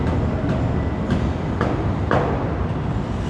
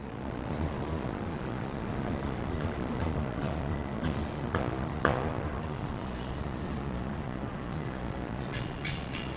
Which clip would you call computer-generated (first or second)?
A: second